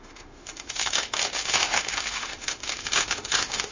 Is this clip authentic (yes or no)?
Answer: no